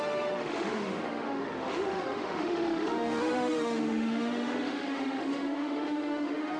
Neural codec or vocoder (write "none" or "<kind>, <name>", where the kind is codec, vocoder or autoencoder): autoencoder, DAC-VAE